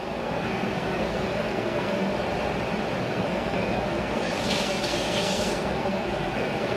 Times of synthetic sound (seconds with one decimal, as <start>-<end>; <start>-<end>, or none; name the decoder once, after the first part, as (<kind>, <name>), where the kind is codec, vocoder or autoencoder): 0.0-2.1 (codec, SNAC); 3.0-6.8